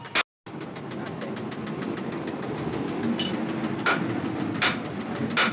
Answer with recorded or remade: recorded